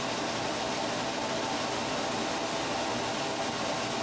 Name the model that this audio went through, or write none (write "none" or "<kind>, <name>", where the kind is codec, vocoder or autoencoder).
vocoder, BigVGAN v2